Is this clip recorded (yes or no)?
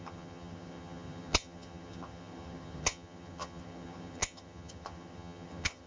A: no